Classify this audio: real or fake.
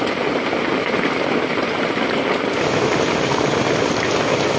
real